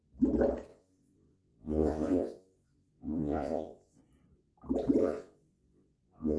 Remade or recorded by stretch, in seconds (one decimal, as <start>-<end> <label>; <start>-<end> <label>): 0.0-0.7 recorded; 0.7-4.0 remade; 4.0-5.0 recorded; 5.0-6.4 remade